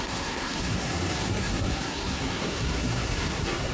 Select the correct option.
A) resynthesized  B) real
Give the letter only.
A